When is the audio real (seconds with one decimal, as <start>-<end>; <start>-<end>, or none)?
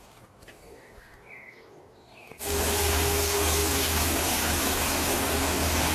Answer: none